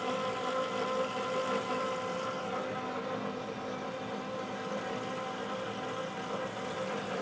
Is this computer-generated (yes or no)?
no